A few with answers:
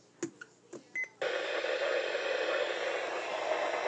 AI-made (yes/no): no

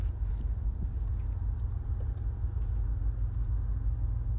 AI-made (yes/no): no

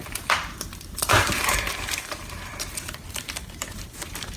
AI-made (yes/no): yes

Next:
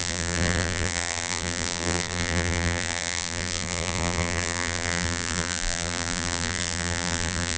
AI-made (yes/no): yes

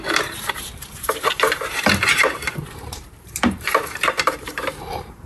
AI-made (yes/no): yes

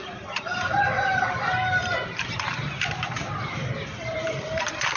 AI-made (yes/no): yes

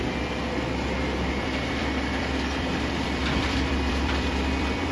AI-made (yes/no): yes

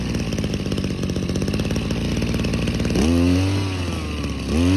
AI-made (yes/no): no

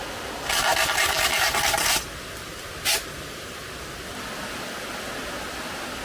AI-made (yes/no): no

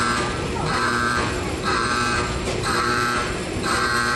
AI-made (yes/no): yes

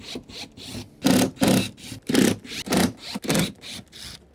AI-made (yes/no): no